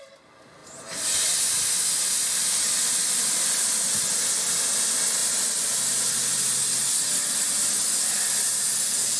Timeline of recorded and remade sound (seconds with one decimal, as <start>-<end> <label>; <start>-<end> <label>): 0.0-0.6 recorded; 0.6-4.2 remade; 4.2-9.2 recorded